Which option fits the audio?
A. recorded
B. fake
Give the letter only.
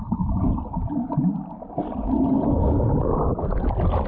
A